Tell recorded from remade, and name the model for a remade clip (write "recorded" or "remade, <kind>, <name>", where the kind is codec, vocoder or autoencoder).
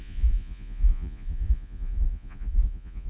remade, vocoder, Vocos